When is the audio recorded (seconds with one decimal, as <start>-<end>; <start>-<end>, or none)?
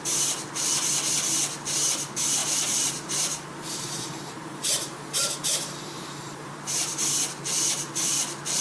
0.0-2.4; 7.3-8.6